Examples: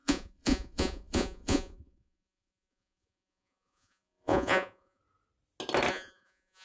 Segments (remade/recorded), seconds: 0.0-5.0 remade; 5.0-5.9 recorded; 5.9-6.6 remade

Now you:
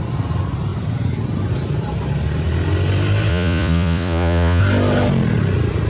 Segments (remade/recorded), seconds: 0.0-3.3 recorded; 3.3-4.6 remade; 4.6-5.9 recorded

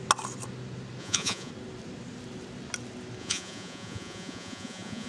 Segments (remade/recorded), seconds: 0.0-1.0 recorded; 1.0-1.5 remade; 1.5-3.2 recorded; 3.2-5.1 remade